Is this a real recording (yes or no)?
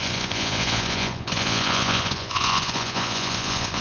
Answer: no